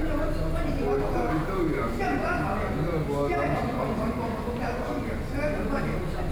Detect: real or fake real